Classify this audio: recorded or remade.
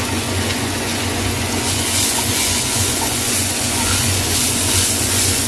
remade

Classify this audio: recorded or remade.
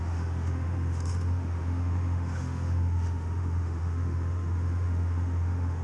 remade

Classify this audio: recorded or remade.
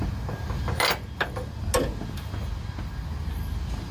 recorded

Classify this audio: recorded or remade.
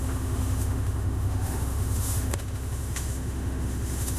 remade